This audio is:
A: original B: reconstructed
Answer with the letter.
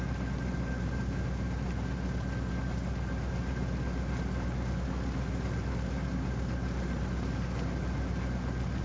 A